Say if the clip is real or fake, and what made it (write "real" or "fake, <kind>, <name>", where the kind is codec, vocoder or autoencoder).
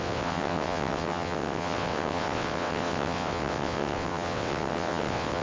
fake, vocoder, WaveNeXt